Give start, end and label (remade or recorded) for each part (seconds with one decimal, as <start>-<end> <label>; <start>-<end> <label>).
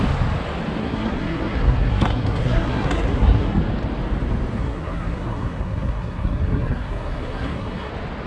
0.0-0.8 recorded; 0.8-3.6 remade; 3.6-4.5 recorded; 4.5-7.9 remade; 7.9-8.3 recorded